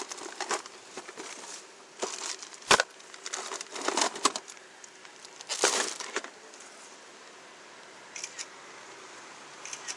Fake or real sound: fake